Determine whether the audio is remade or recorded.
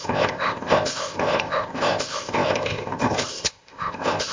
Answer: remade